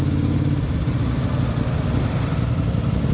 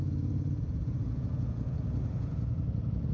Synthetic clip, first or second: second